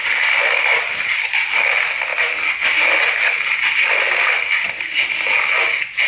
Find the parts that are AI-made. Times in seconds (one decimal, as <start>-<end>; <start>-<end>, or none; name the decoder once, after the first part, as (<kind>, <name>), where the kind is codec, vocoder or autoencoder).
0.0-1.3 (vocoder, BigVGAN v2)